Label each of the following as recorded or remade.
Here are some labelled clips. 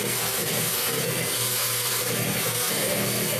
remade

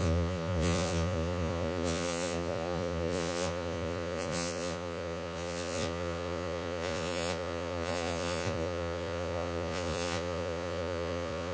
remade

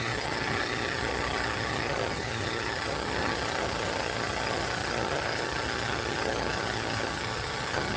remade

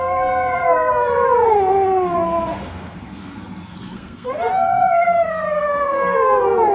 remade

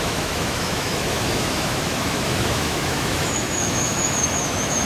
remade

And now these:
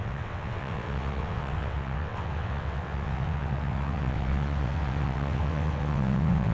remade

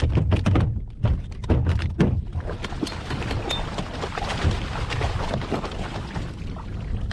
recorded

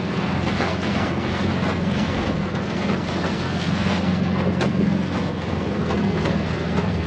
remade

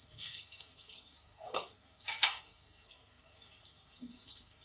remade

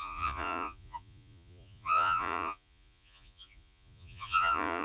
remade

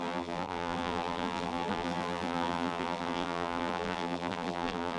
remade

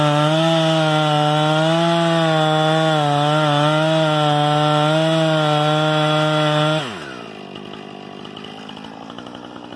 recorded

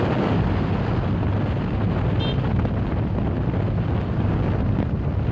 recorded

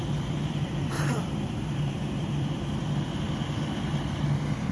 remade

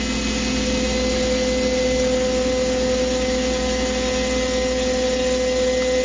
recorded